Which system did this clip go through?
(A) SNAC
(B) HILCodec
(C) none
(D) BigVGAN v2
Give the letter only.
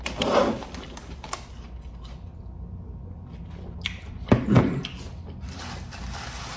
C